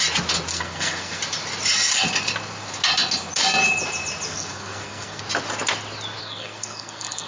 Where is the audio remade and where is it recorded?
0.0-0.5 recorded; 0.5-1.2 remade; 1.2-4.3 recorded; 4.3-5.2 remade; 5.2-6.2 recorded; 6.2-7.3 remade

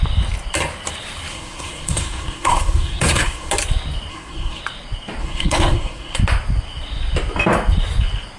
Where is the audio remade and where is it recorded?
0.0-1.3 recorded; 1.3-3.5 remade; 3.5-4.1 recorded; 4.1-4.6 remade; 4.6-5.2 recorded; 5.2-6.2 remade; 6.2-8.4 recorded

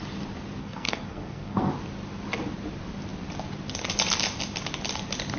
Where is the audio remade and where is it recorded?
0.0-0.6 recorded; 0.6-1.7 remade; 1.7-5.4 recorded

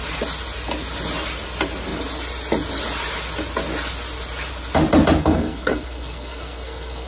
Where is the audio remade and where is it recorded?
0.0-5.2 recorded; 5.2-7.1 remade

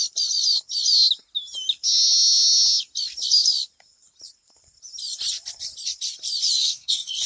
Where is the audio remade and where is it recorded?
0.0-6.6 recorded; 6.6-7.3 remade

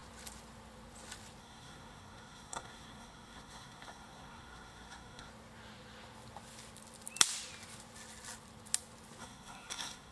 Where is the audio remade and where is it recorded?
0.0-1.4 recorded; 1.4-5.3 remade; 5.3-9.2 recorded; 9.2-10.1 remade